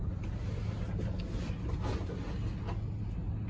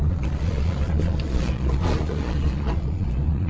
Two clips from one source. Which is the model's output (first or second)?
second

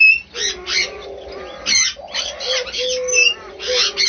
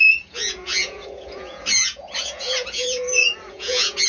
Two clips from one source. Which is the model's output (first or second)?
second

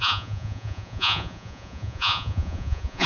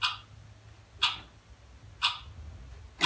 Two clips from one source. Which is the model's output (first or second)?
first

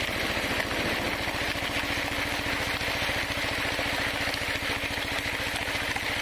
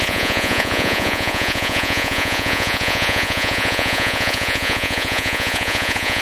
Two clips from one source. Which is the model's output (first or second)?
second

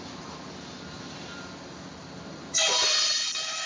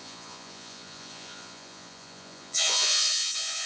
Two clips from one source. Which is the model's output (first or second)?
second